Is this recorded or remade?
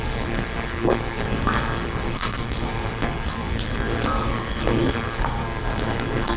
remade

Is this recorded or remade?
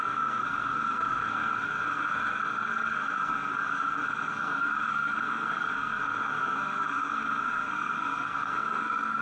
remade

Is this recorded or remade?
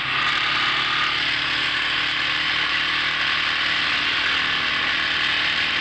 recorded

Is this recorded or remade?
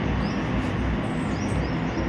recorded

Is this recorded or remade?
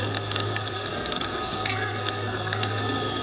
remade